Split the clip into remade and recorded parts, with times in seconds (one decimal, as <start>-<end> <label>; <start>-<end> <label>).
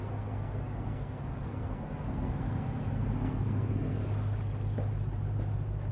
0.0-4.0 remade; 4.0-5.9 recorded